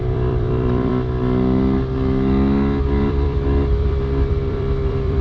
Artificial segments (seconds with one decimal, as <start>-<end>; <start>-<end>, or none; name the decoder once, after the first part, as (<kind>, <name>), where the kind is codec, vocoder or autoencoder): 0.0-0.9 (vocoder, BigVGAN v2); 2.8-5.2